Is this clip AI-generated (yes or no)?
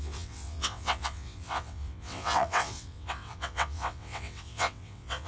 yes